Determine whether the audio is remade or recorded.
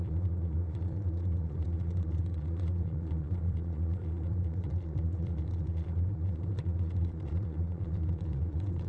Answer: remade